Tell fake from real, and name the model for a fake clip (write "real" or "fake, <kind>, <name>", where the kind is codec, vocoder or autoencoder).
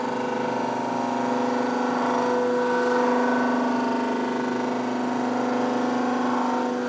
real